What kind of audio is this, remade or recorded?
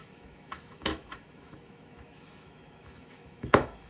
remade